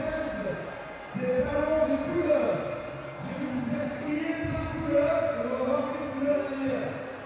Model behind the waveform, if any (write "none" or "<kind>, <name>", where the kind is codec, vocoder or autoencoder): none